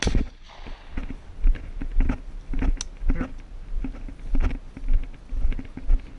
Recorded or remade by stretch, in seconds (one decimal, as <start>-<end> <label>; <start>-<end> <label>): 0.0-6.2 recorded